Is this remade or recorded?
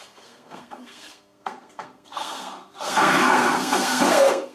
remade